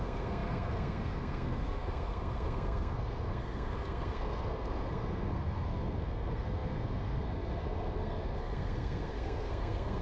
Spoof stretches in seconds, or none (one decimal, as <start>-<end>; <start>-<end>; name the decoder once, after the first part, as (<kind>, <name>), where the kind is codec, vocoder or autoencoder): 0.0-10.0 (codec, SNAC)